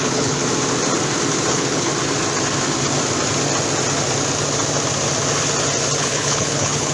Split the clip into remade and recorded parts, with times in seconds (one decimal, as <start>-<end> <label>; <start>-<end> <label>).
0.0-0.4 remade; 0.4-1.5 recorded; 1.5-1.9 remade; 1.9-6.0 recorded; 6.0-6.9 remade